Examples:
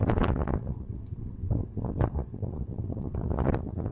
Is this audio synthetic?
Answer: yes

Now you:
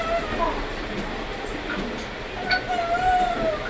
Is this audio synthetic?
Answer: no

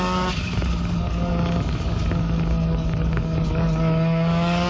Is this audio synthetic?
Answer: yes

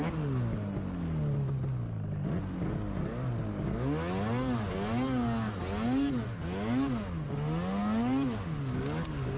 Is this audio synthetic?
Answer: no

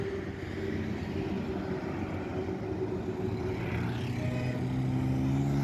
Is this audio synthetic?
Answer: no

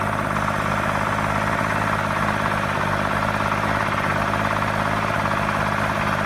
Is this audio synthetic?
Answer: no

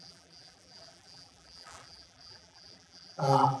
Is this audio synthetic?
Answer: yes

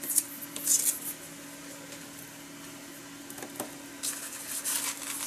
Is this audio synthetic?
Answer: no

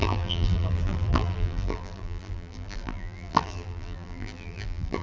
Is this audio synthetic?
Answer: yes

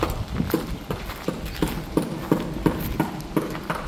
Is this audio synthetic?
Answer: no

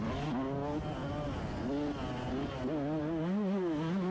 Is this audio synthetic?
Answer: no